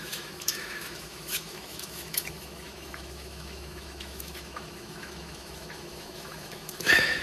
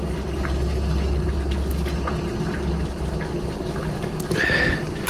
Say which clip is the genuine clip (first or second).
second